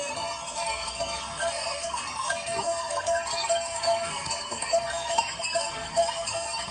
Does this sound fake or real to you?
fake